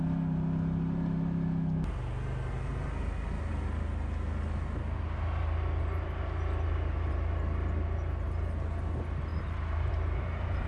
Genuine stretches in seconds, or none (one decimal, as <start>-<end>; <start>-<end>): 0.0-9.3; 9.9-10.7